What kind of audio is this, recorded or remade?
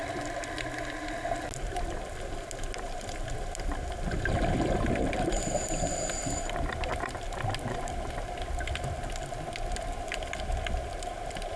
recorded